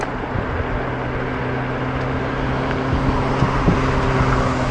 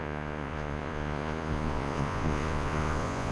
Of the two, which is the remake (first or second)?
second